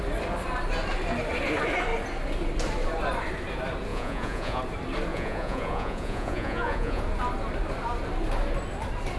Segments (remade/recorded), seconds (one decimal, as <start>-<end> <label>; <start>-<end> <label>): 0.0-3.9 recorded; 3.9-4.6 remade; 4.6-5.1 recorded; 5.1-7.0 remade; 7.0-9.2 recorded

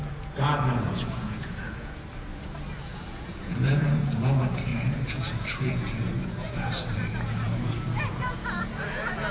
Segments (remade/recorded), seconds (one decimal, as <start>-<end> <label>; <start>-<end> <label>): 0.0-2.3 remade; 2.3-2.8 recorded; 2.8-9.3 remade

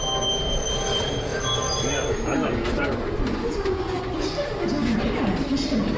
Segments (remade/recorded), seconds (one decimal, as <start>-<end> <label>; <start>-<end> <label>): 0.0-3.3 recorded; 3.3-4.3 remade; 4.3-6.0 recorded

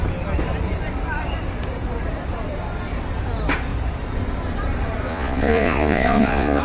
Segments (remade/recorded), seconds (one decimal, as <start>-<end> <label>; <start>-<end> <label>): 0.0-5.1 recorded; 5.1-6.6 remade